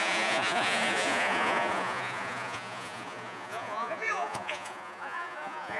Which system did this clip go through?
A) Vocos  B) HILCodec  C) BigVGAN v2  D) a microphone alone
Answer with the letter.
A